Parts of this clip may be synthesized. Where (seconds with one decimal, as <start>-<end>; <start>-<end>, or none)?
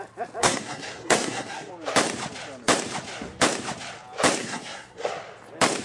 0.4-1.7; 4.4-5.1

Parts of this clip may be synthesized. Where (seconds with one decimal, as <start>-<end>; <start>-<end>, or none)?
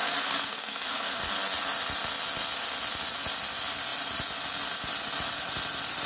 0.0-1.2